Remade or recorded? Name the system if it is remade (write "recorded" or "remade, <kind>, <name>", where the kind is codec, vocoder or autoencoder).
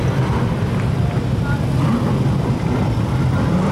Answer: recorded